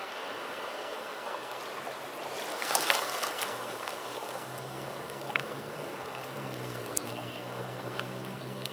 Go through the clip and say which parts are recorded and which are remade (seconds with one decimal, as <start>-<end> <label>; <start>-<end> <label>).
0.0-1.6 remade; 1.6-2.5 recorded; 2.5-8.7 remade